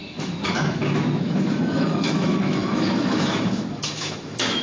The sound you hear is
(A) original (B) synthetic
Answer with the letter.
B